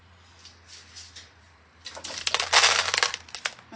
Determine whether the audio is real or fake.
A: real